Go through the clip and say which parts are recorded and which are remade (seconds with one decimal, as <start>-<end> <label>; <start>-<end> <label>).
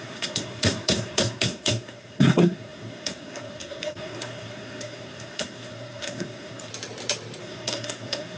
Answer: 0.0-6.7 remade; 6.7-7.4 recorded; 7.4-8.4 remade